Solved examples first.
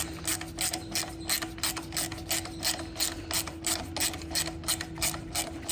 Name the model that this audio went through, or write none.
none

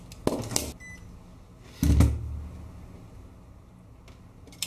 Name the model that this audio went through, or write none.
none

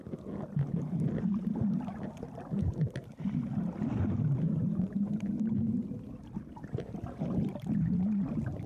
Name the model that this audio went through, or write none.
none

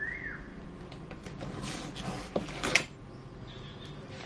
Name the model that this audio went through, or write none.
none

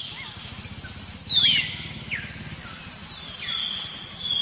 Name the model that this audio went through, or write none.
none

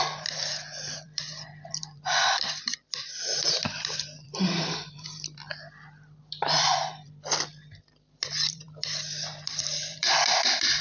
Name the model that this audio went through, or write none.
vocoder, BigVGAN v2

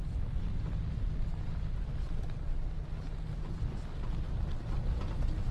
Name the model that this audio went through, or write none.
none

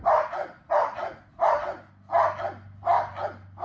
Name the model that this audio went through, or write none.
none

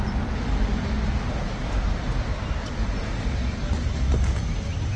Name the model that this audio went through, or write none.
none